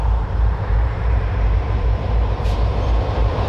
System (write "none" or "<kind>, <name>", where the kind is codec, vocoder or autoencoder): vocoder, BigVGAN v2